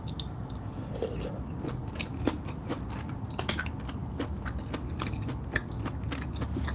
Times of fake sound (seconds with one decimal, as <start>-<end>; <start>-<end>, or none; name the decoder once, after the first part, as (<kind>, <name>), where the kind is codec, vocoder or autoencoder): none